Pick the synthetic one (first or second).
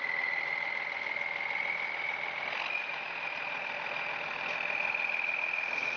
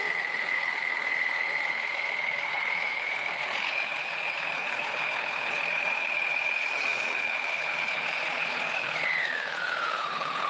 second